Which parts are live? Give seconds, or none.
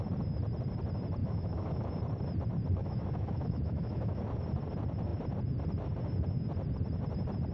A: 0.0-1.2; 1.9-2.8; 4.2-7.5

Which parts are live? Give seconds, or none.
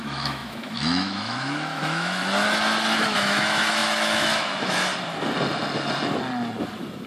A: 2.2-3.0; 4.9-7.1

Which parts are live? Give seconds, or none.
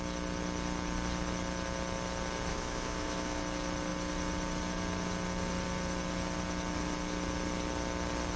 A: 0.0-2.5; 3.4-8.4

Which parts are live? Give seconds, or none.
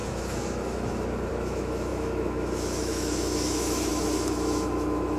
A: none